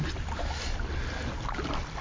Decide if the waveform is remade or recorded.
recorded